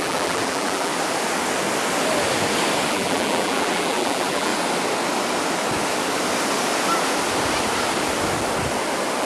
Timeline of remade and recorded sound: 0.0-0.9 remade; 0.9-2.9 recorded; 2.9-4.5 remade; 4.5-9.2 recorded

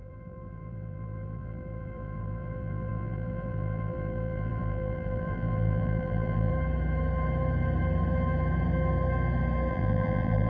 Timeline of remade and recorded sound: 0.0-6.5 remade; 6.5-9.7 recorded; 9.7-10.5 remade

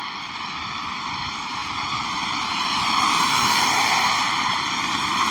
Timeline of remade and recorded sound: 0.0-1.1 recorded; 1.1-5.3 remade

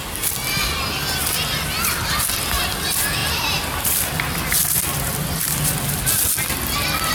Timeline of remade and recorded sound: 0.0-3.2 recorded; 3.2-5.6 remade; 5.6-7.1 recorded